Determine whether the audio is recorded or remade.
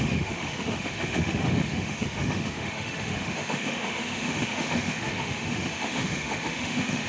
remade